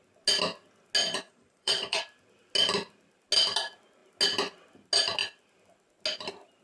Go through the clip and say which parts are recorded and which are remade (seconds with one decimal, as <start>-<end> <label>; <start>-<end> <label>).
0.0-1.0 recorded; 1.0-2.0 remade; 2.0-6.6 recorded